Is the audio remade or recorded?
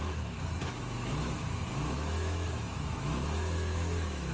remade